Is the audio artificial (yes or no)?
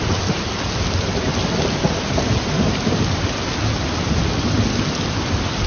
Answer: no